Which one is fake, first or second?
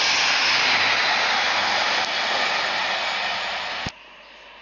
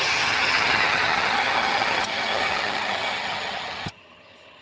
second